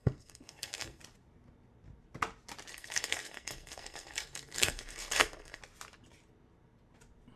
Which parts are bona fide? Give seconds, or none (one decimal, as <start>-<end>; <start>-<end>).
1.0-2.7; 5.6-7.4